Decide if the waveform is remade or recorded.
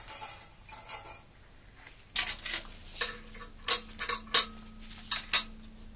recorded